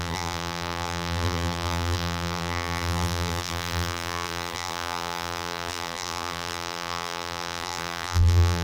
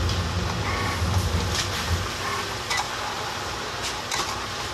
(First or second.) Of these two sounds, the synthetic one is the first